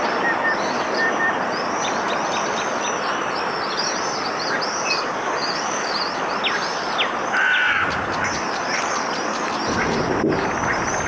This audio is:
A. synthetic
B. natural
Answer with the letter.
B